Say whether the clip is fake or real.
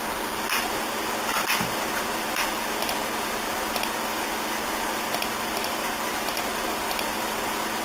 real